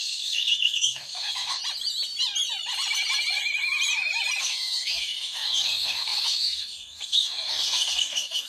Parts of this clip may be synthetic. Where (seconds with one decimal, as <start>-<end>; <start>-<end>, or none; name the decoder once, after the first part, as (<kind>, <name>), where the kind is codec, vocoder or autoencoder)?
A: 0.0-1.6 (codec, DAC); 4.4-8.5